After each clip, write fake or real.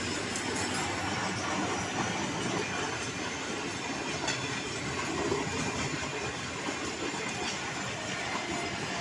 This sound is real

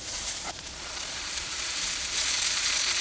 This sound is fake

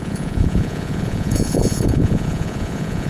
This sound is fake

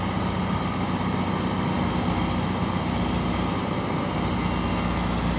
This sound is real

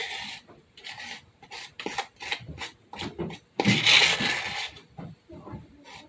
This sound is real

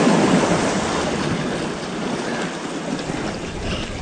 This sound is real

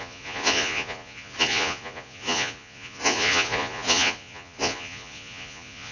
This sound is fake